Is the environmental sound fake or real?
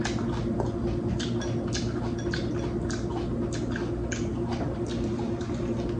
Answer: real